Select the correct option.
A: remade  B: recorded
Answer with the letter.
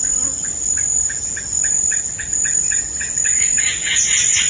B